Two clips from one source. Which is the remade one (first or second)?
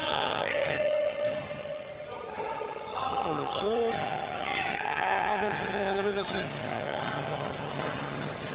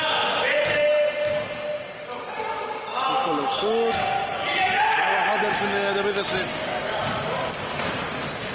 first